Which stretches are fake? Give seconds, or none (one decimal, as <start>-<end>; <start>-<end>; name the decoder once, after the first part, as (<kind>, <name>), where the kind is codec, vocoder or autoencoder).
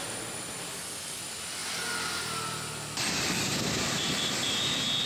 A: 0.7-1.2 (codec, DAC)